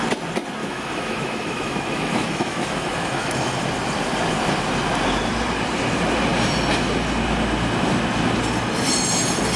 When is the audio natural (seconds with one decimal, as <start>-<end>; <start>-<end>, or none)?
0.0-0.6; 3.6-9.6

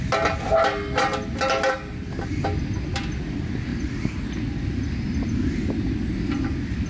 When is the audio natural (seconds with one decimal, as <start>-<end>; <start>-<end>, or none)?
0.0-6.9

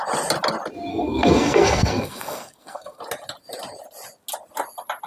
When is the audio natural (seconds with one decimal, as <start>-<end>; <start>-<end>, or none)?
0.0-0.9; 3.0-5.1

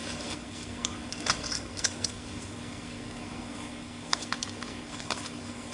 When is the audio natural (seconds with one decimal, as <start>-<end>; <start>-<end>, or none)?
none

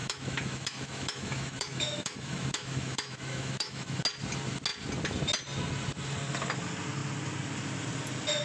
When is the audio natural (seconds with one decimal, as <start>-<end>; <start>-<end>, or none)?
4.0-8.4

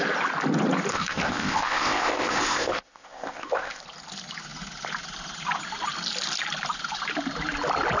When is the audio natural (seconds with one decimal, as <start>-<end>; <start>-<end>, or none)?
0.0-0.9; 3.8-8.0

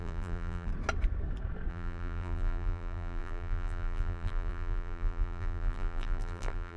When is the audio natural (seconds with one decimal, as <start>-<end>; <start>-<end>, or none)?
0.7-1.7

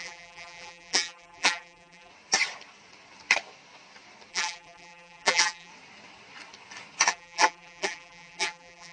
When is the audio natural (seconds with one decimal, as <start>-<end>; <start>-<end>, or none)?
2.1-4.3; 5.7-7.1